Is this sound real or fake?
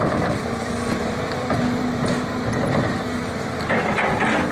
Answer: real